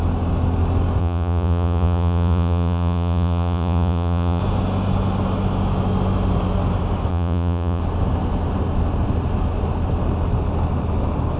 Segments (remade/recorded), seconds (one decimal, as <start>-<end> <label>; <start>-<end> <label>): 0.0-1.0 recorded; 1.0-4.4 remade; 4.4-7.1 recorded; 7.1-7.8 remade; 7.8-11.4 recorded